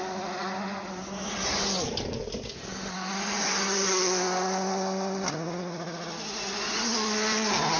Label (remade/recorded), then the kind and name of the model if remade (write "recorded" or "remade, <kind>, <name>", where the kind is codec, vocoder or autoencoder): recorded